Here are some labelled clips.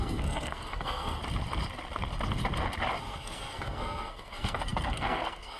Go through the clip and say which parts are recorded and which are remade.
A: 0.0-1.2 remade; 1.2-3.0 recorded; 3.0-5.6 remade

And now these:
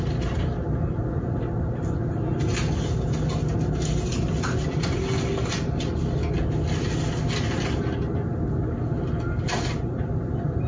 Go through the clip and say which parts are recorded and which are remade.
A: 0.0-10.7 recorded

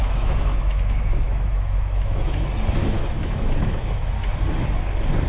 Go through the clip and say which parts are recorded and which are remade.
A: 0.0-2.4 remade; 2.4-2.8 recorded; 2.8-4.1 remade; 4.1-5.3 recorded

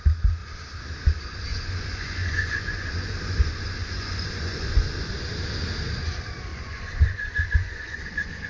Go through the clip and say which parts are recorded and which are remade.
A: 0.0-1.5 recorded; 1.5-5.1 remade; 5.1-6.5 recorded; 6.5-8.5 remade